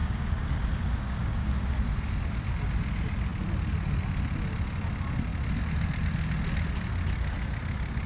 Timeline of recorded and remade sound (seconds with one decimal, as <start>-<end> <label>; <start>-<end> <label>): 0.0-1.7 remade; 1.7-8.1 recorded

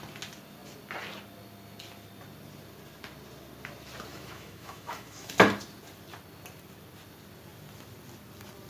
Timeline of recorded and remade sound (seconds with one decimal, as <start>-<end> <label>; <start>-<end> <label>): 0.0-4.1 recorded; 4.1-5.3 remade; 5.3-8.7 recorded

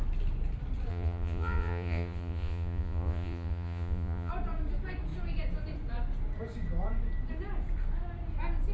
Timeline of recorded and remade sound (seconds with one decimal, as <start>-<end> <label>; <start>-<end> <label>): 0.0-0.9 recorded; 0.9-4.3 remade; 4.3-8.7 recorded

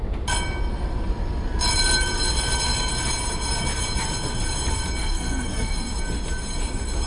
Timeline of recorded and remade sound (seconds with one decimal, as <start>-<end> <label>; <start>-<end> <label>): 0.0-5.0 recorded; 5.0-5.9 remade; 5.9-7.1 recorded